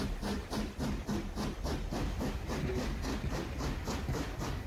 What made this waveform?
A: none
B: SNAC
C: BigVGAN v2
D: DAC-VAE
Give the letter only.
A